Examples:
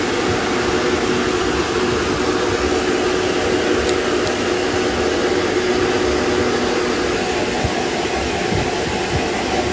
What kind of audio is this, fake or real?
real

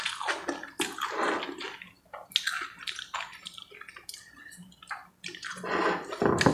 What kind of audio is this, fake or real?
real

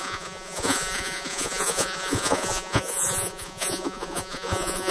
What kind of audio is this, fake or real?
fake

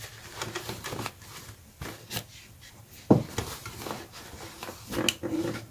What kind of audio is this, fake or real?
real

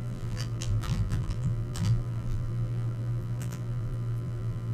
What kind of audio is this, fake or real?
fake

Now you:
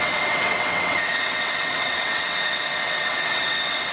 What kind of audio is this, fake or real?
fake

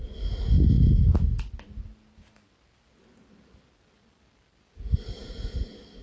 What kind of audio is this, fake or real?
real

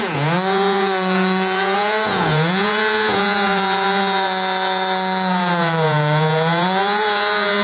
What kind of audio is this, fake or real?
fake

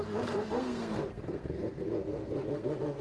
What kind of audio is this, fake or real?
fake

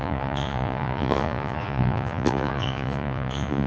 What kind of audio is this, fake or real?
fake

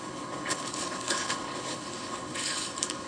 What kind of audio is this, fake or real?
fake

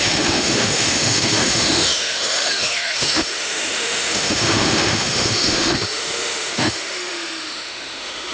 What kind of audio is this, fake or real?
fake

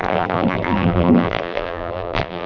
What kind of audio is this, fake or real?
fake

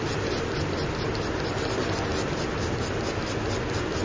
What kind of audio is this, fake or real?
real